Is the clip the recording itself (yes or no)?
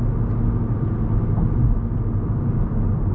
yes